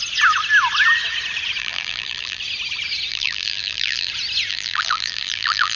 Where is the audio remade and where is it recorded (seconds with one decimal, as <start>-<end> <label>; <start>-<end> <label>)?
0.0-1.6 recorded; 1.6-2.4 remade; 2.4-3.1 recorded; 3.1-4.1 remade; 4.1-4.5 recorded; 4.5-5.8 remade